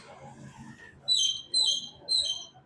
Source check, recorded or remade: recorded